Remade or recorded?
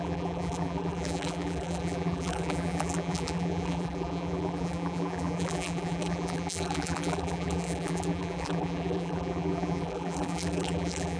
remade